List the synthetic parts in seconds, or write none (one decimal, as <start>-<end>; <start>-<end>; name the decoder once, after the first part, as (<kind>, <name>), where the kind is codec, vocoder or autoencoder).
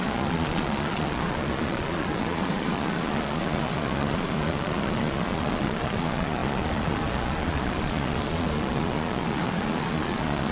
0.0-10.5 (vocoder, Vocos)